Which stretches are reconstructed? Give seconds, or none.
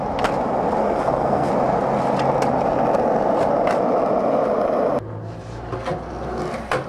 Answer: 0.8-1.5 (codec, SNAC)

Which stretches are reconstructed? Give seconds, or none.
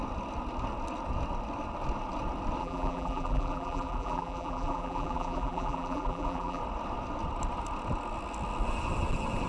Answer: 2.6-6.6 (vocoder, BigVGAN v2)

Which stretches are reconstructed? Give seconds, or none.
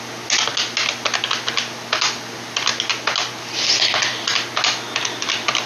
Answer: none